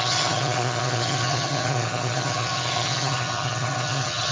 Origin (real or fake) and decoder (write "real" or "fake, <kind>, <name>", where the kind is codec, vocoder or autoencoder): fake, vocoder, HiFi-GAN